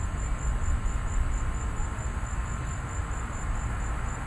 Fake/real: real